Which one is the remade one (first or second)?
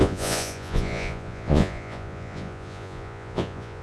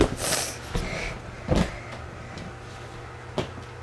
first